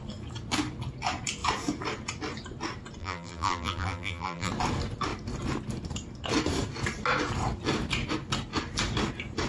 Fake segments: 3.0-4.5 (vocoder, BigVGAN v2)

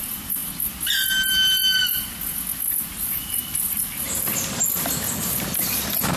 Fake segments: 0.0-0.4 (vocoder, BigVGAN v2); 2.7-4.3; 4.8-6.2

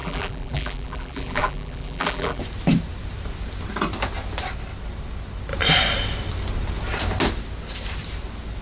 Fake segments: 0.0-2.4 (vocoder, BigVGAN v2)

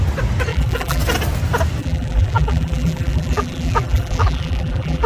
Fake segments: 0.5-1.0 (vocoder, BigVGAN v2); 1.8-5.1

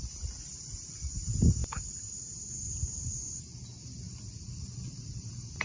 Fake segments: 1.6-2.4 (vocoder, BigVGAN v2)

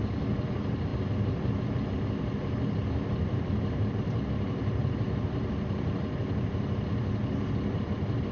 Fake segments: 3.2-6.2 (vocoder, BigVGAN v2)

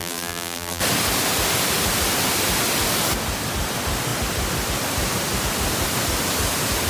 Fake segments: 0.0-0.8 (vocoder, BigVGAN v2)